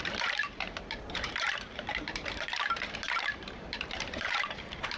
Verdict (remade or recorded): remade